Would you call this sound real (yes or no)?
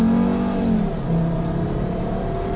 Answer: yes